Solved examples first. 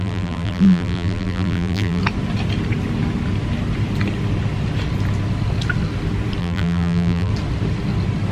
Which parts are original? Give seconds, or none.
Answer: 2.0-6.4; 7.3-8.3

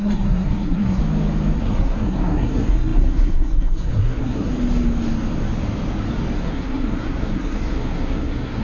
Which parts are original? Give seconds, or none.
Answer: 1.0-1.6; 4.5-6.4